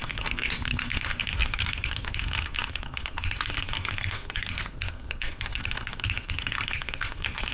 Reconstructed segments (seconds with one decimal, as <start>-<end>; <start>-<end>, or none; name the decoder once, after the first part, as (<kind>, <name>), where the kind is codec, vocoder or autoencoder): 0.0-7.5 (codec, SNAC)